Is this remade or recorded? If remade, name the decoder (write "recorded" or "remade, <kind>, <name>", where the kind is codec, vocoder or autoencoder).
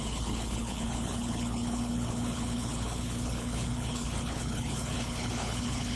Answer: remade, codec, HILCodec